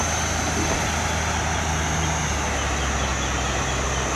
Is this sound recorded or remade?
recorded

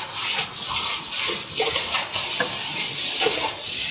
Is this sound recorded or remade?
recorded